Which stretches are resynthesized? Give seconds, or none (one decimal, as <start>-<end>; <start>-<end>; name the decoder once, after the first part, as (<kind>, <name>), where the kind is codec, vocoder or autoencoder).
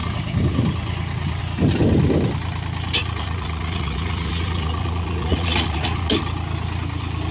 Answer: 3.0-6.2 (vocoder, Vocos)